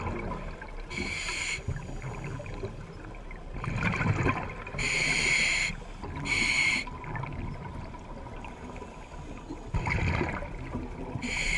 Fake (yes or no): no